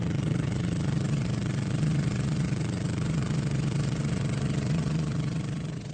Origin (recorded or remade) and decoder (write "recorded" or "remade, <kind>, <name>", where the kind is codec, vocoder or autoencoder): remade, vocoder, Vocos